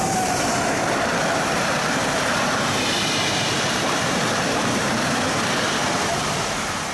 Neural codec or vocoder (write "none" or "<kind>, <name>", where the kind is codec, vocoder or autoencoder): vocoder, BigVGAN v2